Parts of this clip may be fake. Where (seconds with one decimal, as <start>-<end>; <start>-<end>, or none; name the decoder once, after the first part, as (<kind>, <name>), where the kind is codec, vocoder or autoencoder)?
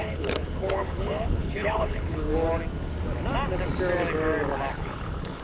0.0-2.3 (codec, HILCodec); 4.7-5.4